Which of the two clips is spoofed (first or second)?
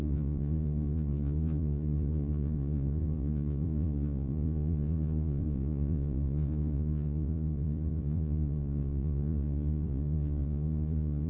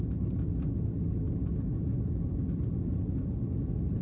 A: first